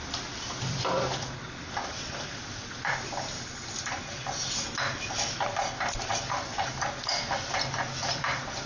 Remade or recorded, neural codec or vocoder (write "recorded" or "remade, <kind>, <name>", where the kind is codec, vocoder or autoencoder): remade, vocoder, BigVGAN v2